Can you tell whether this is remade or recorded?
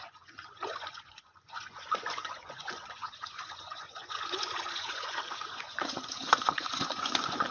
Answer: remade